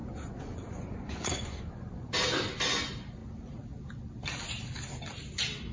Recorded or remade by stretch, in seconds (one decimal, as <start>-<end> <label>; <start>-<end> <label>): 0.0-2.1 remade; 2.1-5.7 recorded